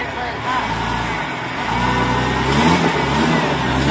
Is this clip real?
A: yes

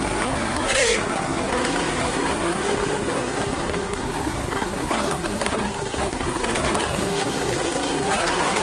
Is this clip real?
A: no